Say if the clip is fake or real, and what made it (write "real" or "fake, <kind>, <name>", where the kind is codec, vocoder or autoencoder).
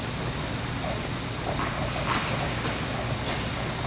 real